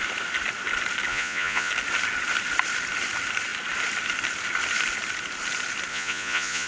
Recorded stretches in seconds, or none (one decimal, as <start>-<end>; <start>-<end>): 0.0-1.1; 1.7-5.9